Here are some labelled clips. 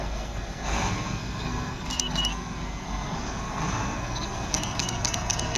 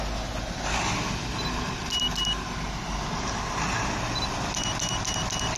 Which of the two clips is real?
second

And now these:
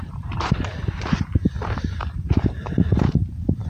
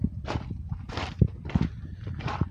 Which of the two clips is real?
second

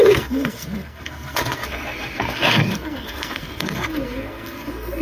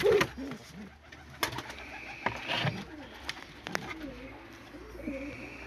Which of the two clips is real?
second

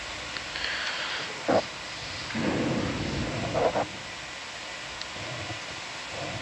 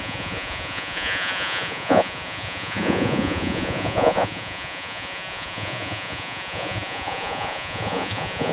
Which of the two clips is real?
first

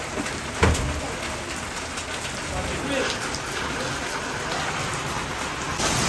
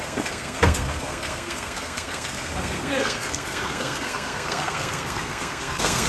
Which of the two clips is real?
first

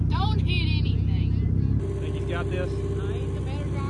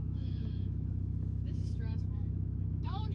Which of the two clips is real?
first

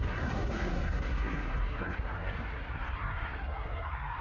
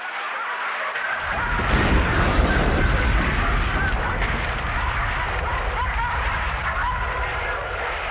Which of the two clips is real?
second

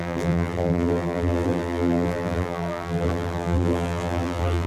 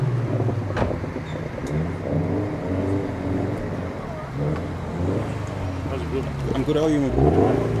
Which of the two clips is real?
second